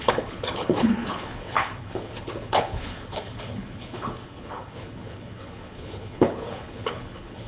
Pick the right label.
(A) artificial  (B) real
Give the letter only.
A